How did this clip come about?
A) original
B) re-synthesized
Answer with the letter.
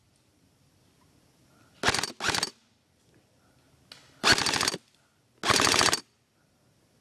A